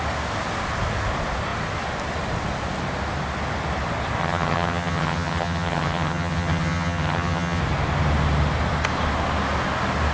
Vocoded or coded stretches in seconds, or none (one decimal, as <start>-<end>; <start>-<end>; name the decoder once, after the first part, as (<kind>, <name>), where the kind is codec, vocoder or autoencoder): 4.2-7.6 (vocoder, HiFi-GAN)